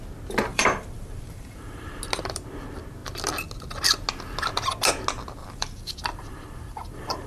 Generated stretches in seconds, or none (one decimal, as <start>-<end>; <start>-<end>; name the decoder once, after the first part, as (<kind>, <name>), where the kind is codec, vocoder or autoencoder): 0.5-2.0 (vocoder, BigVGAN v2); 5.4-7.3